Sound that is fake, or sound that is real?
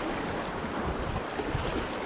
real